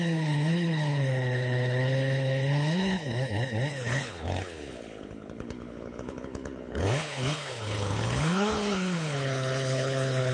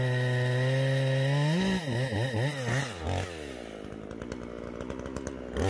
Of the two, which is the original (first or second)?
second